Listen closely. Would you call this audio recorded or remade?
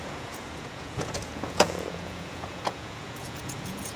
remade